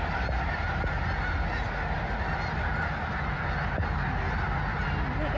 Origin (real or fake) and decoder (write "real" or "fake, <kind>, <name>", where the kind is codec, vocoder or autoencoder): real